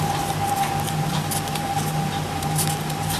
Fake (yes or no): no